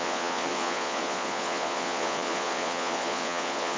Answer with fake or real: fake